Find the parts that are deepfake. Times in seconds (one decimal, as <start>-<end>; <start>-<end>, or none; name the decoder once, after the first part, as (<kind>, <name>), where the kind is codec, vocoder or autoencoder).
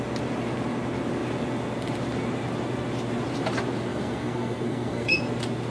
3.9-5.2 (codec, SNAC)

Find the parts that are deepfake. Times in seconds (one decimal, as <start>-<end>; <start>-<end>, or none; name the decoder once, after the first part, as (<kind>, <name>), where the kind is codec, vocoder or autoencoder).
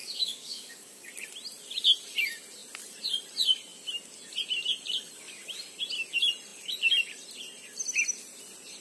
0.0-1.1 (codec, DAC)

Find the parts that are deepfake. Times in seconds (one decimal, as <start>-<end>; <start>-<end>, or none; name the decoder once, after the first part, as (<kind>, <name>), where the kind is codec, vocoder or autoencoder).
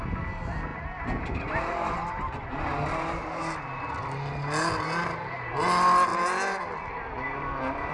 none